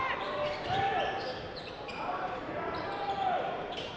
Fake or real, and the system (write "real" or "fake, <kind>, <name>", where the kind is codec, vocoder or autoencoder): fake, vocoder, BigVGAN v2